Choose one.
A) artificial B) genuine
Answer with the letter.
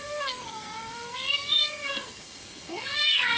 A